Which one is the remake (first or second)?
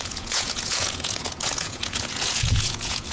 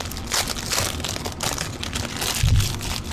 first